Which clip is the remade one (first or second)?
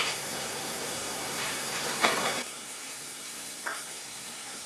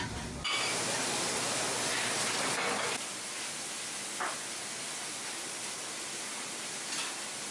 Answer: first